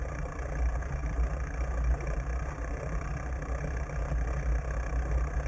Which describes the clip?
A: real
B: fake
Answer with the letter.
A